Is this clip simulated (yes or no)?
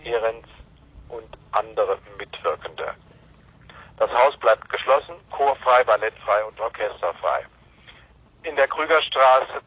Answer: no